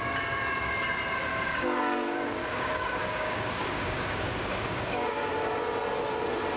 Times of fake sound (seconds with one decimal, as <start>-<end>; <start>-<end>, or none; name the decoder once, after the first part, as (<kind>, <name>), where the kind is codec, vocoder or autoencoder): 1.3-5.3 (codec, DAC)